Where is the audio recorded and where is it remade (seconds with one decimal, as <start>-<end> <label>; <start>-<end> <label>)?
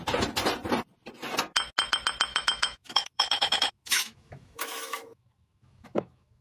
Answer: 0.0-2.3 recorded; 2.3-6.4 remade